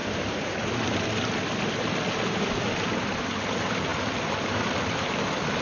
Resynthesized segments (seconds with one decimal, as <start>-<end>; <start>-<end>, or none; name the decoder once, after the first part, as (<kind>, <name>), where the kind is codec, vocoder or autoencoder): none

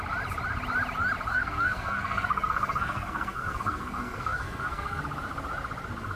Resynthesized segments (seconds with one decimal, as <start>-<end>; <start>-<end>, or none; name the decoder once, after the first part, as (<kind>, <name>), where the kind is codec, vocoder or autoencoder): 1.3-5.0 (codec, SNAC)

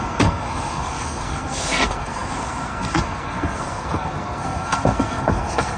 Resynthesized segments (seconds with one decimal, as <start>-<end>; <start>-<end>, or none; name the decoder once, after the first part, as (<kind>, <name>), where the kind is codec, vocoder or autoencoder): 0.0-5.8 (codec, SNAC)

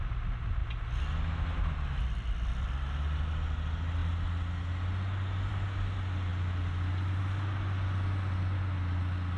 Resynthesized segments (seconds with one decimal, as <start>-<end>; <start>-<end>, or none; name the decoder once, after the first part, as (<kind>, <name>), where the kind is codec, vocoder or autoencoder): none